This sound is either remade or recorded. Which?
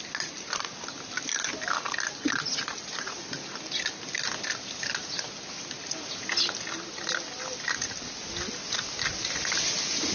recorded